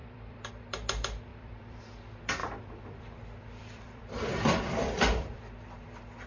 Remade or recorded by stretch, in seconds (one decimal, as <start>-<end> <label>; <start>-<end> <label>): 0.0-0.5 remade; 0.5-1.3 recorded; 1.3-1.8 remade; 1.8-2.4 recorded; 2.4-5.4 remade; 5.4-6.3 recorded